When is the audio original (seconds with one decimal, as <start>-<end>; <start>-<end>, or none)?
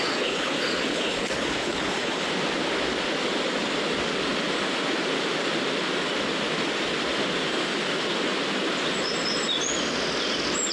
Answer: 2.3-10.7